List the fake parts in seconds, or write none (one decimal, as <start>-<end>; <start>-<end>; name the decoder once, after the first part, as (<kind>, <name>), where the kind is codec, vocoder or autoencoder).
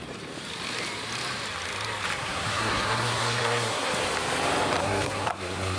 2.2-3.9 (codec, SNAC); 4.8-5.8